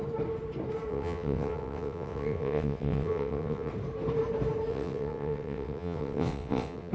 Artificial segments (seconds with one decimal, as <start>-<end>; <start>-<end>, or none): 0.9-3.7; 4.7-6.9